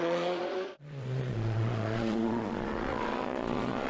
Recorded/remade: remade